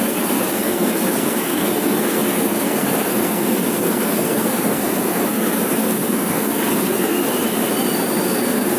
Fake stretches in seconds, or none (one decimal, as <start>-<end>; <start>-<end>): 0.0-7.2; 8.2-8.8